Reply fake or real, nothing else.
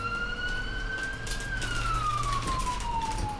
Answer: real